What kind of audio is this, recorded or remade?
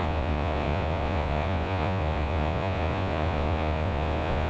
remade